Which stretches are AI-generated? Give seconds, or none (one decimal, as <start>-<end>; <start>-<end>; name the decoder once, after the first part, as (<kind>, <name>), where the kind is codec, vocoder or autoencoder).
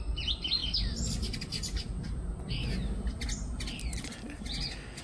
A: none